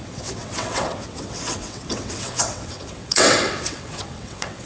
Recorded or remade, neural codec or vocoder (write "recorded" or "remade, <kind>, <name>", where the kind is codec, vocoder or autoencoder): remade, vocoder, WaveNeXt